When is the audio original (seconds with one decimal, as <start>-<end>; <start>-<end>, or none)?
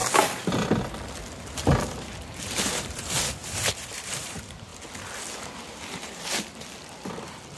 0.0-1.3; 4.7-7.6